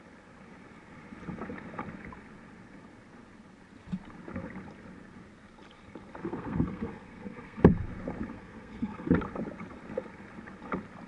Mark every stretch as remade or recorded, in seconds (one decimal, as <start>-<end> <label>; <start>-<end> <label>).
0.0-6.2 recorded; 6.2-7.6 remade; 7.6-8.3 recorded; 8.3-9.2 remade; 9.2-11.1 recorded